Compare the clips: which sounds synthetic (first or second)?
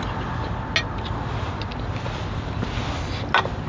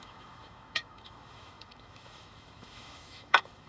second